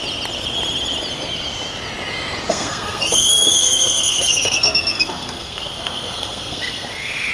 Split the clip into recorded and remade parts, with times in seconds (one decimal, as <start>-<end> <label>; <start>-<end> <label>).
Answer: 0.0-2.5 recorded; 2.5-7.3 remade